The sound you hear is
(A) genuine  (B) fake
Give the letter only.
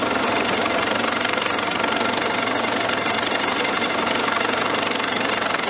A